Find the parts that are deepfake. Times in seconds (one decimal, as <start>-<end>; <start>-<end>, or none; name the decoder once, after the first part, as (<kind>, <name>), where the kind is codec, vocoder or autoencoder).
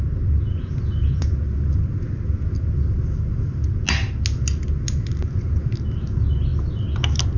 none